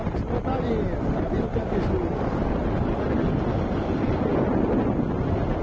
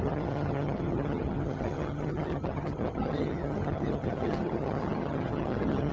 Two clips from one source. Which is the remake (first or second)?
second